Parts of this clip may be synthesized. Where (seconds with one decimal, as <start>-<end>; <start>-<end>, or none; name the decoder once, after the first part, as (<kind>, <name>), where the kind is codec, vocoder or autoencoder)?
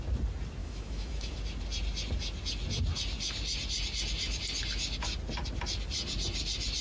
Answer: 0.6-1.4 (autoencoder, DAC-VAE)